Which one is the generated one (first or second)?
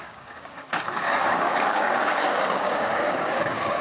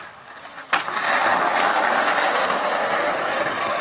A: first